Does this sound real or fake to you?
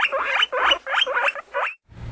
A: real